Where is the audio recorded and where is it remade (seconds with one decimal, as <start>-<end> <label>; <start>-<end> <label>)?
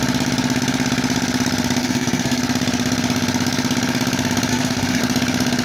0.0-1.8 recorded; 1.8-2.4 remade; 2.4-4.5 recorded; 4.5-5.0 remade; 5.0-5.6 recorded